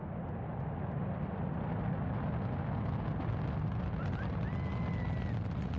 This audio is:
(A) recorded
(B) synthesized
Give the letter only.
A